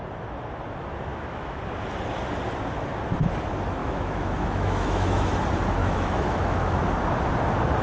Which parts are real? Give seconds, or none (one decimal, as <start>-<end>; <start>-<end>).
0.0-1.1; 1.6-3.8; 5.2-5.8; 6.8-7.8